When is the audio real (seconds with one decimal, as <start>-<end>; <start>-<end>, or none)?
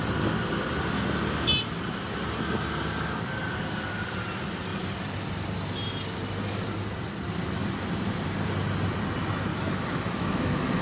0.0-9.5